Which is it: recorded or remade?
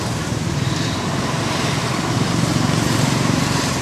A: remade